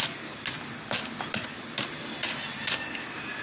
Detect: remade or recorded recorded